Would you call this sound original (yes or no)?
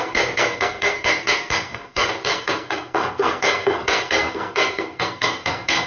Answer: no